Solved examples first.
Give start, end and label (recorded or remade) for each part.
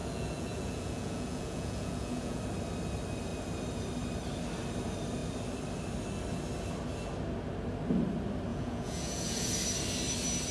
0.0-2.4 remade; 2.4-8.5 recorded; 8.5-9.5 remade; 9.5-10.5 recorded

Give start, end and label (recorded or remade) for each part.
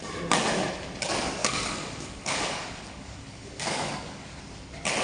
0.0-1.4 recorded; 1.4-4.4 remade; 4.4-5.0 recorded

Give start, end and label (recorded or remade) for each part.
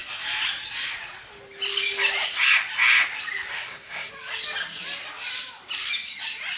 0.0-3.5 recorded; 3.5-4.1 remade; 4.1-6.6 recorded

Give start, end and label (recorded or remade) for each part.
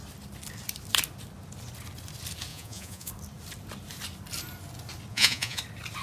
0.0-2.5 recorded; 2.5-3.1 remade; 3.1-5.1 recorded; 5.1-5.6 remade; 5.6-6.0 recorded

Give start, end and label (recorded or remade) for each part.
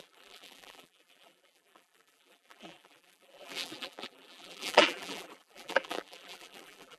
0.0-7.0 remade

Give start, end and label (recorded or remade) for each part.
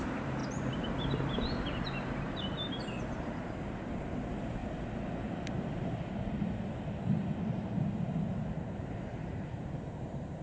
0.0-4.6 remade; 4.6-8.2 recorded; 8.2-10.4 remade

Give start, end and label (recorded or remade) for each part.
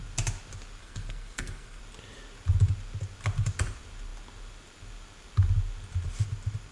0.0-0.8 recorded; 0.8-1.8 remade; 1.8-6.7 recorded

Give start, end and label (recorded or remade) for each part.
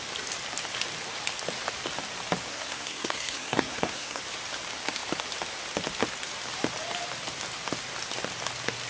0.0-2.5 recorded; 2.5-4.2 remade; 4.2-8.9 recorded